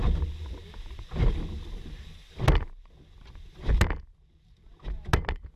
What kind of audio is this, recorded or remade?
recorded